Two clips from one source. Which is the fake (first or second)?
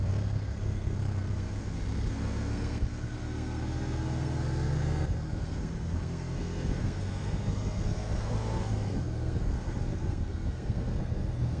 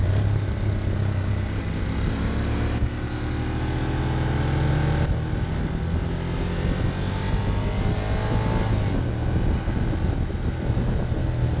first